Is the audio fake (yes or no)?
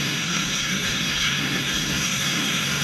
yes